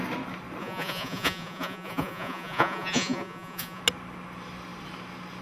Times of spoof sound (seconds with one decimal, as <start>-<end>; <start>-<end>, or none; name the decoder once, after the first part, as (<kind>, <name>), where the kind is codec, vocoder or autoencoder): 0.6-3.8 (vocoder, Vocos)